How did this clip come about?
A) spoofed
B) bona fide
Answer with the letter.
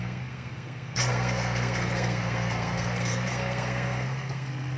A